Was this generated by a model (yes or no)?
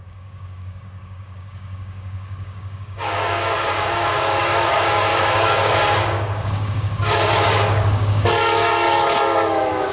yes